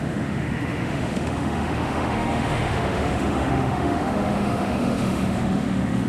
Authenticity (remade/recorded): remade